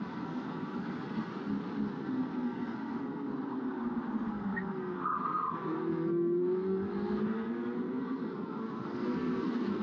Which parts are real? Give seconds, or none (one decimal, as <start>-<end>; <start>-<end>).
1.3-2.0; 3.3-4.3